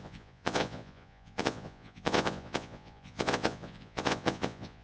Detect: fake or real fake